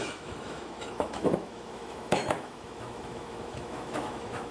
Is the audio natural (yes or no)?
no